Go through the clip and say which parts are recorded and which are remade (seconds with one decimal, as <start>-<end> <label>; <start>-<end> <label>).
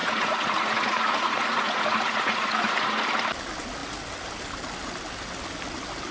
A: 0.0-3.0 remade; 3.0-6.1 recorded